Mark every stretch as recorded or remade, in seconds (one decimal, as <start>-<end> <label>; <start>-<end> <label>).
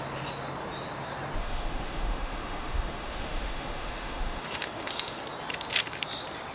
0.0-1.4 recorded; 1.4-5.2 remade; 5.2-6.5 recorded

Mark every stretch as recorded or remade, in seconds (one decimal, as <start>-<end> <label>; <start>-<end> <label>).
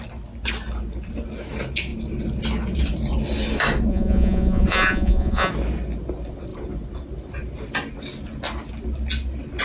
0.0-3.9 recorded; 3.9-5.5 remade; 5.5-9.6 recorded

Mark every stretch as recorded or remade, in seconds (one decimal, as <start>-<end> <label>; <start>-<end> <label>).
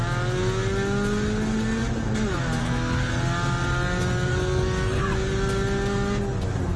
0.0-2.6 recorded; 2.6-3.1 remade; 3.1-4.3 recorded; 4.3-5.0 remade; 5.0-6.8 recorded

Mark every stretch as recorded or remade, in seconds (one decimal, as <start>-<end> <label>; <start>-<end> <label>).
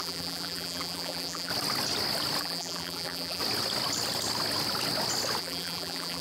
0.0-1.5 remade; 1.5-2.4 recorded; 2.4-3.4 remade; 3.4-5.4 recorded; 5.4-6.2 remade